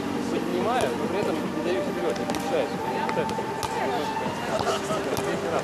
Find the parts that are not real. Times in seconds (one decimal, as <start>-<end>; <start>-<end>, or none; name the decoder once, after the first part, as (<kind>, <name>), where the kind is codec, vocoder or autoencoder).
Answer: 0.5-1.4 (vocoder, BigVGAN v2)